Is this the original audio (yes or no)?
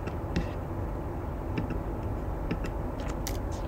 yes